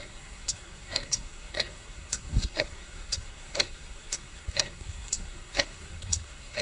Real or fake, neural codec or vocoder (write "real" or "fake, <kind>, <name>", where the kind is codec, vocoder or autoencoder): fake, codec, SNAC